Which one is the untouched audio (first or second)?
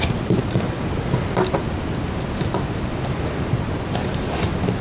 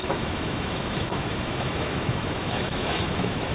first